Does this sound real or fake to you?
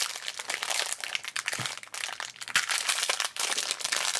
real